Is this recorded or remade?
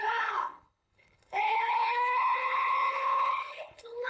remade